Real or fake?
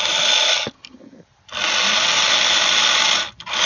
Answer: real